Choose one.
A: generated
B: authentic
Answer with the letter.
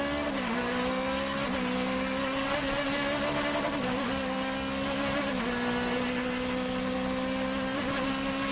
B